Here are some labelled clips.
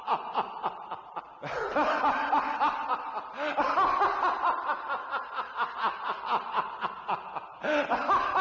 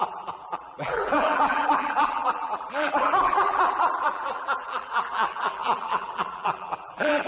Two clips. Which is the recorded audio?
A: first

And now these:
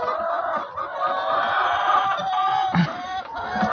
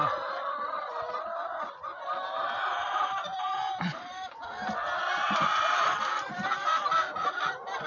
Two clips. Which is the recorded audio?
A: first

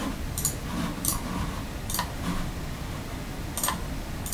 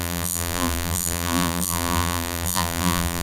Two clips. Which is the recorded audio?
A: first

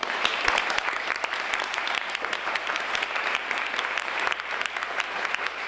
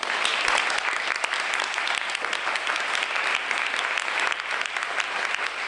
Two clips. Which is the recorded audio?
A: second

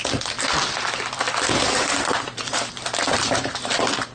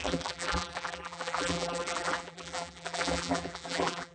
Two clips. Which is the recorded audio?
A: first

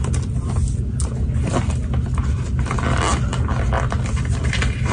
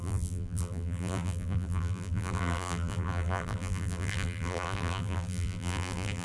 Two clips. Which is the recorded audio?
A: first